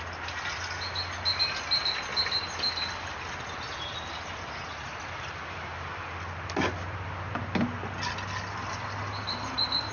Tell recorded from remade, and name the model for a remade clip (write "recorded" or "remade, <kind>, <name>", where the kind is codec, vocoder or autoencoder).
recorded